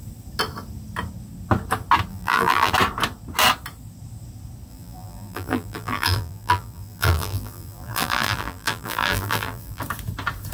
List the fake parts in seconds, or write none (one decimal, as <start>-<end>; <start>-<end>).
2.1-2.7; 4.7-9.8